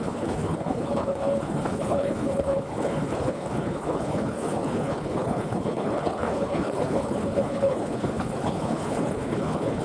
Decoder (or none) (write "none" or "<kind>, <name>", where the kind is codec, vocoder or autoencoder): codec, HILCodec